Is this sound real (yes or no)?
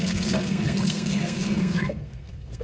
no